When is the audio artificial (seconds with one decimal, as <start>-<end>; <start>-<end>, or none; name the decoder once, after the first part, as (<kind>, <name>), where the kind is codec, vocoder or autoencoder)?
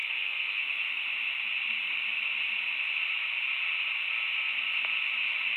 0.0-0.6 (codec, SNAC)